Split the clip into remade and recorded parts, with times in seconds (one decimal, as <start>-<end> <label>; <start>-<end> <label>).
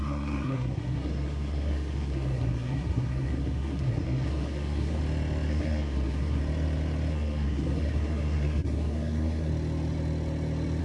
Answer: 0.0-5.0 remade; 5.0-5.5 recorded; 5.5-6.4 remade; 6.4-7.1 recorded; 7.1-9.5 remade; 9.5-10.8 recorded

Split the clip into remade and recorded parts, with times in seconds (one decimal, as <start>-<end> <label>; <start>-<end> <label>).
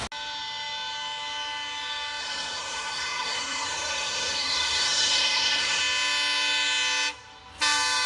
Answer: 0.0-2.2 recorded; 2.2-5.8 remade; 5.8-8.1 recorded